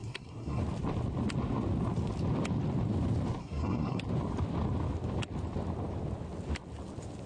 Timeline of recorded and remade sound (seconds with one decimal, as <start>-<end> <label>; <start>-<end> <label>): 0.0-0.6 remade; 0.6-3.4 recorded; 3.4-4.0 remade; 4.0-7.3 recorded

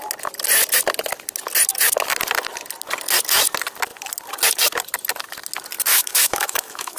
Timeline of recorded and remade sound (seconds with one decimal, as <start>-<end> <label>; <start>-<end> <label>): 0.0-5.9 recorded; 5.9-7.0 remade

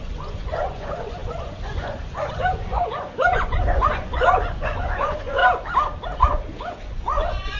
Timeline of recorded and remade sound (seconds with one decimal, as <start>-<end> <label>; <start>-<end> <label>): 0.0-5.4 remade; 5.4-6.2 recorded; 6.2-7.6 remade